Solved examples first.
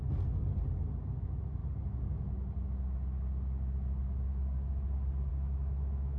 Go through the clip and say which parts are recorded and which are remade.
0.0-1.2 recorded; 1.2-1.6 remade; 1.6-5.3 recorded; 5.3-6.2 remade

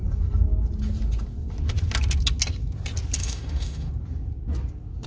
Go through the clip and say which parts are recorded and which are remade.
0.0-3.2 recorded; 3.2-3.9 remade; 3.9-5.1 recorded

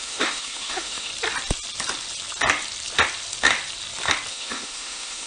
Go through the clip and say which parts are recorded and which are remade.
0.0-1.1 remade; 1.1-4.3 recorded; 4.3-5.3 remade

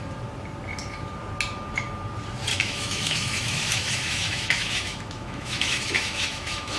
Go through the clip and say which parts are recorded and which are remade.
0.0-2.5 recorded; 2.5-6.8 remade

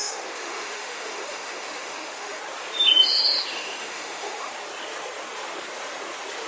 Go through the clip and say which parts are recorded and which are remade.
0.0-2.4 remade; 2.4-3.5 recorded; 3.5-4.5 remade; 4.5-6.5 recorded

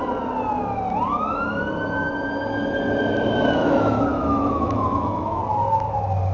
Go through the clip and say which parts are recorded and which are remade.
0.0-3.6 recorded; 3.6-5.4 remade; 5.4-6.3 recorded

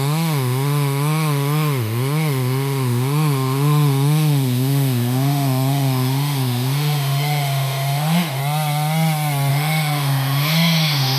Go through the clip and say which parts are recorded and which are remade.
0.0-8.4 remade; 8.4-9.5 recorded; 9.5-11.2 remade

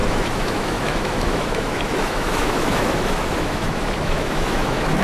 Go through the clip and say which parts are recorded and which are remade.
0.0-5.0 remade